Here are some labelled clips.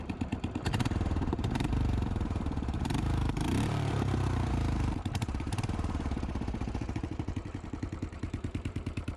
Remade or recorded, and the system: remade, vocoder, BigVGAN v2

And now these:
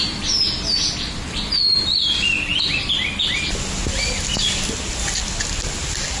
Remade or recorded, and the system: recorded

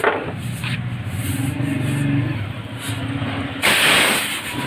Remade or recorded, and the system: recorded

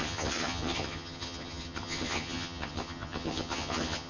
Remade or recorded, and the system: remade, vocoder, HiFi-GAN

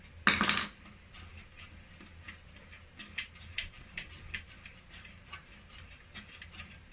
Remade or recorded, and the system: recorded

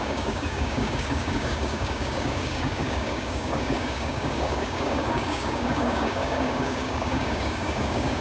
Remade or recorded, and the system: remade, codec, DAC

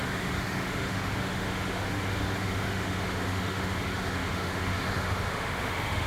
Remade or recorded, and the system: remade, autoencoder, DAC-VAE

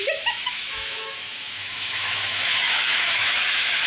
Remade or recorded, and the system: remade, autoencoder, DAC-VAE